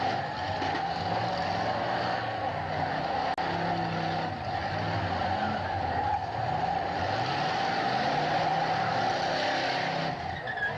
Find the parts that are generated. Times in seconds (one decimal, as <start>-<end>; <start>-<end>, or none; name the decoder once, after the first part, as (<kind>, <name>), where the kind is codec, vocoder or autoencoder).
none